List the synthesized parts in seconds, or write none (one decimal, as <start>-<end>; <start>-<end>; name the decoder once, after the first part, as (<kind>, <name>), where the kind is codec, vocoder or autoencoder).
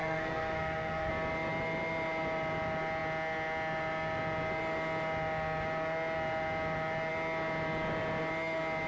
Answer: 0.0-1.1 (codec, SNAC)